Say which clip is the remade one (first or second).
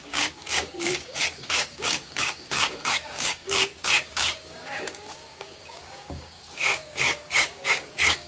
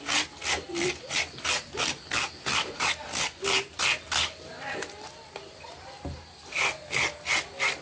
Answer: first